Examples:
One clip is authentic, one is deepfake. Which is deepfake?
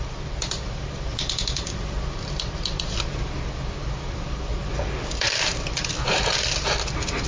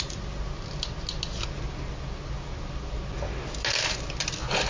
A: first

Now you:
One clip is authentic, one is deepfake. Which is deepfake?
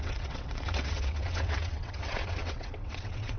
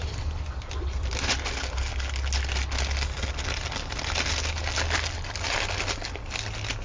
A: first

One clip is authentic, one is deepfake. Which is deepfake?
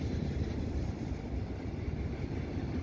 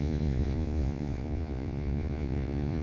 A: second